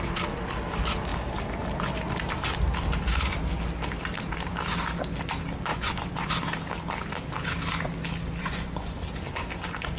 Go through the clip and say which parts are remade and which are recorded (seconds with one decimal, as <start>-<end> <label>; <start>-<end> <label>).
0.0-5.7 recorded; 5.7-6.3 remade; 6.3-8.4 recorded; 8.4-9.0 remade; 9.0-10.0 recorded